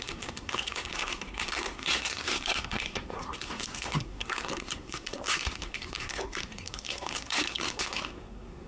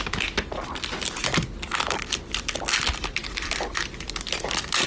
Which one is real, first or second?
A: second